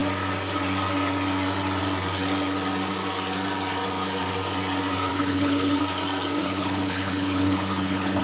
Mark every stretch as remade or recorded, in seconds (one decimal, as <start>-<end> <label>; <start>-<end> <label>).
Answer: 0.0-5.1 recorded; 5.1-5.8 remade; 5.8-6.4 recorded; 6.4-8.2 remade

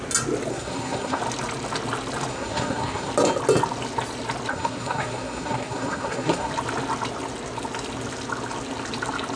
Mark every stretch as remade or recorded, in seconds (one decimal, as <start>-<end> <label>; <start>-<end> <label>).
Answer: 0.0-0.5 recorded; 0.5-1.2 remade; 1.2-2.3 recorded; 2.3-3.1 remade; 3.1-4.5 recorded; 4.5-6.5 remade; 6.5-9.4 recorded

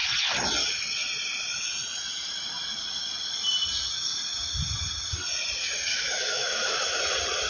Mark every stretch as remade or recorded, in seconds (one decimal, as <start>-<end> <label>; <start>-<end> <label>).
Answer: 0.0-5.9 recorded; 5.9-7.0 remade; 7.0-7.5 recorded

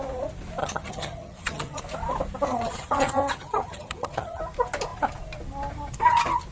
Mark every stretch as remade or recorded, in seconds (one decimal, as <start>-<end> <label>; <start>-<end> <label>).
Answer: 0.0-0.6 recorded; 0.6-1.8 remade; 1.8-2.5 recorded; 2.5-4.4 remade; 4.4-6.5 recorded